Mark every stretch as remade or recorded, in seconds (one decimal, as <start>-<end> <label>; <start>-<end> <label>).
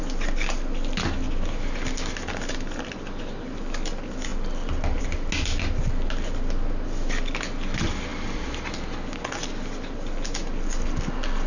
0.0-11.5 recorded